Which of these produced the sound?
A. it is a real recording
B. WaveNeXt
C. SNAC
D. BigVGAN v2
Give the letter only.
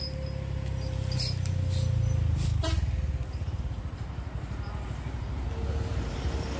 A